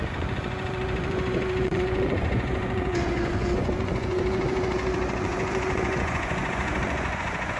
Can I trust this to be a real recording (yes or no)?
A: no